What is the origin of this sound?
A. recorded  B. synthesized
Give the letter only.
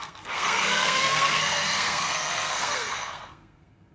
B